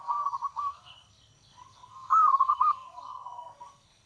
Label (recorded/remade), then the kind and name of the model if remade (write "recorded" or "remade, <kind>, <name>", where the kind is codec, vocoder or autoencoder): remade, codec, SNAC